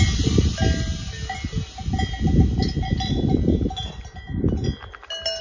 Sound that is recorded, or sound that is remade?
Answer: recorded